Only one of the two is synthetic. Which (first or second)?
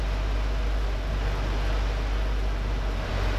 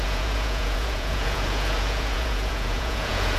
second